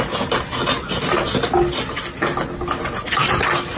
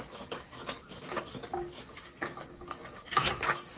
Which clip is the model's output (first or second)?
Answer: second